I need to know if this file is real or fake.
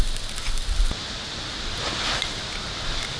real